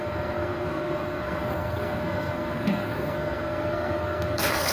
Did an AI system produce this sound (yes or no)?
yes